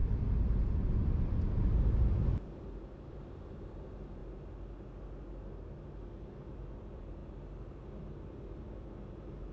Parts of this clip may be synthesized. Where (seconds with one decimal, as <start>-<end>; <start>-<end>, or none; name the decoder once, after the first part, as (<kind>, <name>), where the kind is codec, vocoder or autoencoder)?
2.0-4.2 (vocoder, BigVGAN v2); 6.5-7.2; 7.8-9.5